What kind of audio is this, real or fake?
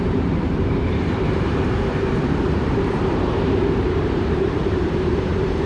fake